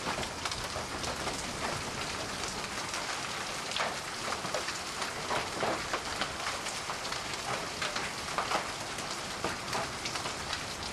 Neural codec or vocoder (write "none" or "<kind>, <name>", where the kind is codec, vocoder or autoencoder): none